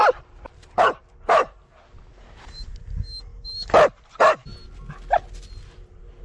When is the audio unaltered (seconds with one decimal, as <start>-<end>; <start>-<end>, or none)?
2.0-6.2